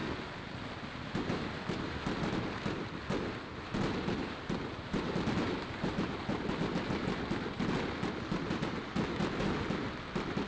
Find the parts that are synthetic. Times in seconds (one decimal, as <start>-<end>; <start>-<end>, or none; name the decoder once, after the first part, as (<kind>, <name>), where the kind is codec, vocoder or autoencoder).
none